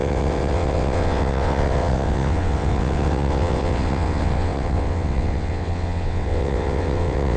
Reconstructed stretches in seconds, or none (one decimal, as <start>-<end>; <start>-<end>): 0.0-7.4